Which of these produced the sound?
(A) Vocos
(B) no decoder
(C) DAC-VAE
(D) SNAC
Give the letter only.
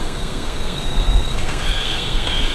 D